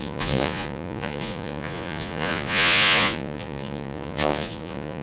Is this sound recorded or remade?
remade